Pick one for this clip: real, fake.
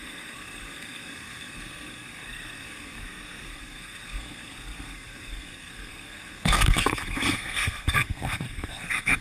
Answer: fake